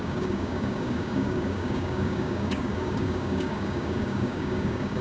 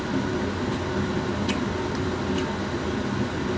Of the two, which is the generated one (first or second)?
first